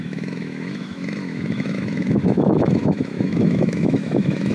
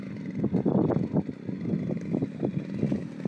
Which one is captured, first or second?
second